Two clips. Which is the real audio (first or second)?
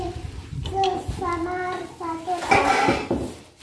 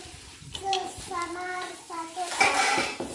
first